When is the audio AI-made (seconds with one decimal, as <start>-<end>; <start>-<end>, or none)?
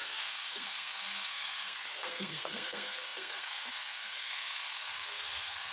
0.0-5.7